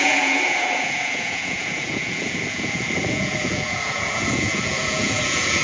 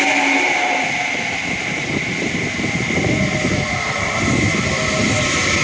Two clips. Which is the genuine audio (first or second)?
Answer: second